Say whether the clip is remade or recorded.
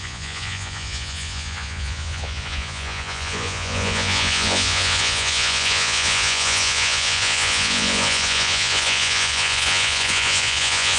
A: remade